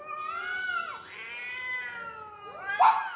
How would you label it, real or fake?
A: real